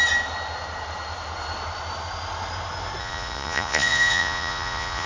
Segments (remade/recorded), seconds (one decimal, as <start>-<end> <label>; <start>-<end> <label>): 0.0-3.0 recorded; 3.0-5.1 remade